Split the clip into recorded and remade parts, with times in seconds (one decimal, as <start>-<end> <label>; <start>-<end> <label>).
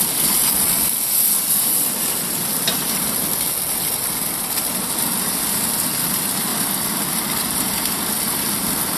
0.0-9.0 recorded